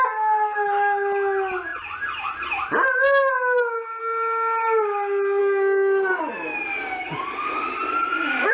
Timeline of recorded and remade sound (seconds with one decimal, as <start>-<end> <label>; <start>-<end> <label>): 0.0-5.4 recorded; 5.4-6.2 remade; 6.2-8.5 recorded